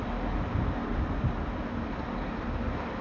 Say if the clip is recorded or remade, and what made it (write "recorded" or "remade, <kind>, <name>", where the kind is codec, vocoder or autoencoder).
recorded